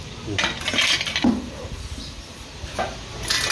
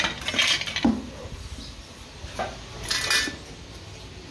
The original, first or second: second